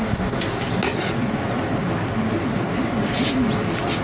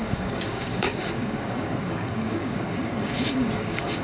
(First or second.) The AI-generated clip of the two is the second